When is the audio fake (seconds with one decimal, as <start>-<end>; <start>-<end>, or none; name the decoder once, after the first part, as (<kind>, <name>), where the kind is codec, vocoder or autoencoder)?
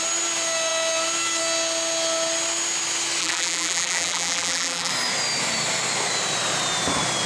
3.2-4.9 (vocoder, BigVGAN v2)